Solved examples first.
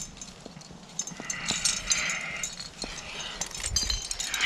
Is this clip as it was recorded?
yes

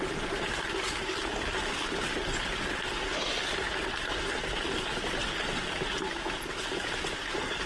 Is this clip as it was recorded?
yes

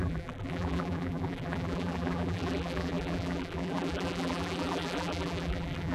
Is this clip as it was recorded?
no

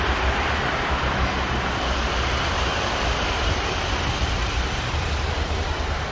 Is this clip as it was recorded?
no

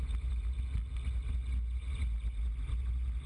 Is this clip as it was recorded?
yes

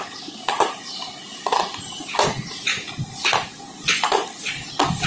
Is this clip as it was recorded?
yes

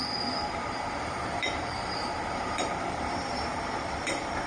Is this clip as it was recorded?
no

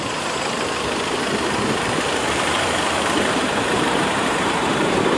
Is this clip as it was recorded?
no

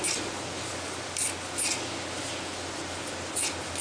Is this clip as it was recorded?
yes